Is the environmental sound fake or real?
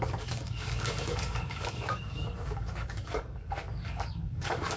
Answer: fake